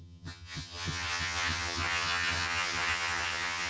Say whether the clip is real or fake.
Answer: fake